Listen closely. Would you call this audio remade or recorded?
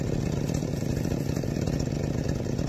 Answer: recorded